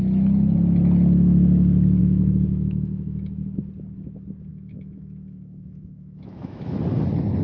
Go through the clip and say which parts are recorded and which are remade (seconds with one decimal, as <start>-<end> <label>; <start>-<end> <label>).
0.0-2.0 recorded; 2.0-3.6 remade; 3.6-4.5 recorded; 4.5-6.8 remade; 6.8-7.4 recorded